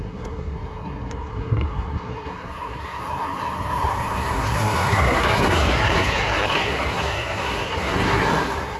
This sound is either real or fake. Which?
fake